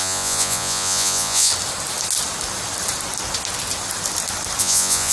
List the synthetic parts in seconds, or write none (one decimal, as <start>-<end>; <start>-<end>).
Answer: 0.0-1.5; 4.6-5.1